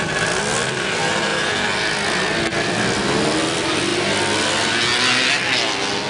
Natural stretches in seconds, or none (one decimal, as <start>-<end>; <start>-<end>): 0.0-6.1